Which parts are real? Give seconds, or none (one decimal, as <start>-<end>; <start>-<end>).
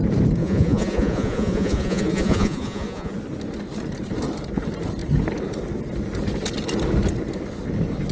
0.0-0.4; 3.1-8.1